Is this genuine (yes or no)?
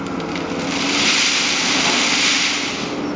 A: yes